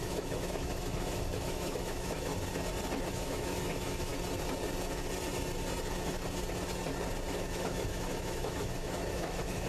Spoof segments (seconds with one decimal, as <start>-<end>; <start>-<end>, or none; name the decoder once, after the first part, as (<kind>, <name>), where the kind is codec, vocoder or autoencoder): 0.0-2.3 (autoencoder, DAC-VAE); 3.1-4.1; 7.3-9.7